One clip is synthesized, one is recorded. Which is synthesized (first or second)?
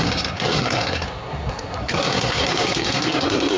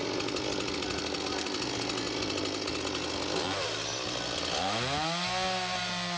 first